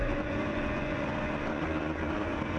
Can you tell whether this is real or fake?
fake